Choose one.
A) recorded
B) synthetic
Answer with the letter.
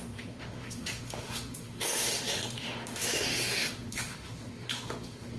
B